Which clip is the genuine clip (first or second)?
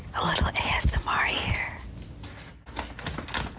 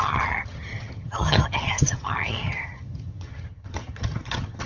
first